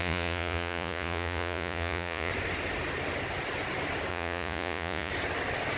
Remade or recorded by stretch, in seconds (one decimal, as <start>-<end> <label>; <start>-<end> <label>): 0.0-2.3 remade; 2.3-4.1 recorded; 4.1-5.1 remade; 5.1-5.8 recorded